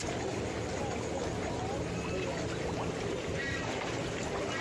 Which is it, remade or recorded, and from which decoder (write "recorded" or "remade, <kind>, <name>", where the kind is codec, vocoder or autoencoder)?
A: recorded